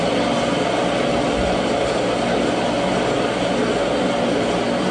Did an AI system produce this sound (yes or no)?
no